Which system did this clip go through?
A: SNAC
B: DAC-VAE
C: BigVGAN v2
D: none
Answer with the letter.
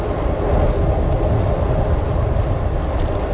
D